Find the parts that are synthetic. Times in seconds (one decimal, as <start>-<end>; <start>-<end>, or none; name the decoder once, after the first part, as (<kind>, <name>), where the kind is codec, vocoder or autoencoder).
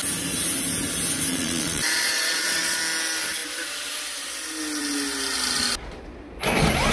1.3-2.8 (vocoder, Vocos)